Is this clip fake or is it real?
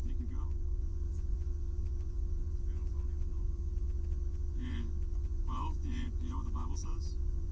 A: fake